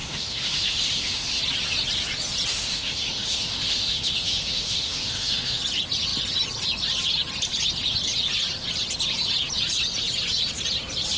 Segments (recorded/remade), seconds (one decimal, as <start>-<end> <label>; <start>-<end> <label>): 0.0-1.4 remade; 1.4-2.5 recorded; 2.5-5.6 remade; 5.6-11.2 recorded